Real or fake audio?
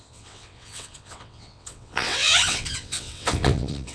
fake